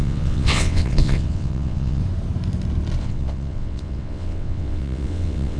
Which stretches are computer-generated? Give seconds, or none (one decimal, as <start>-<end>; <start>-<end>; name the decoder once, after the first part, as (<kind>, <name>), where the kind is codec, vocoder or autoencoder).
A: 0.0-2.0 (vocoder, WaveNeXt); 3.0-5.6